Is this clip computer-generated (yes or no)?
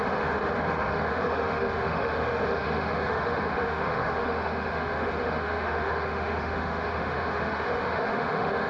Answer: yes